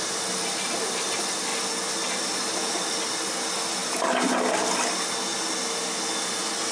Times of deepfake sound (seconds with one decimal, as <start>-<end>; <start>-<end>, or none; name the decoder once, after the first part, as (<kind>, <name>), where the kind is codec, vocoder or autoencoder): none